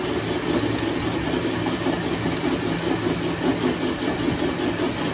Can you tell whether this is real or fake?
real